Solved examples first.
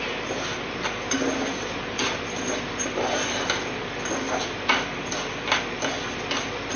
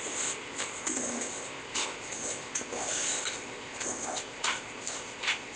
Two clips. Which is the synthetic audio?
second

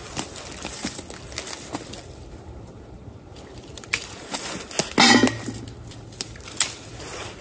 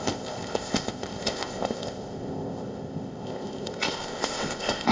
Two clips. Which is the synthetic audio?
second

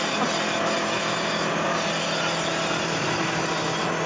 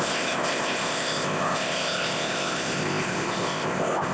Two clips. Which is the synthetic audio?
second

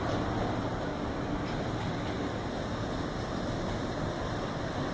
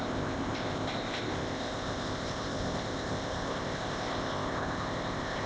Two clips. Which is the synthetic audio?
second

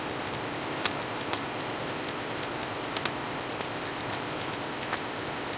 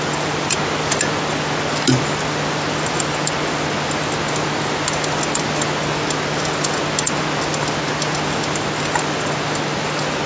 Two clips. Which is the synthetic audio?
first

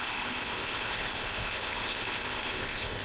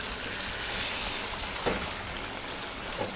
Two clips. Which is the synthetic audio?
first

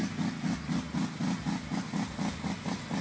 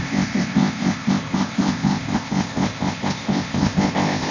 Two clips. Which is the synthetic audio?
second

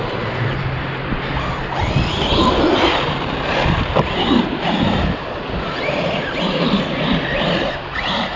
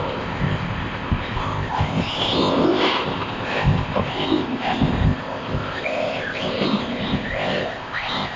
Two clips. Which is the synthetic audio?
second